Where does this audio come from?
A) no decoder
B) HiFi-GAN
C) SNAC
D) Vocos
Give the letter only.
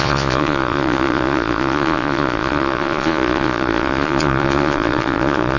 D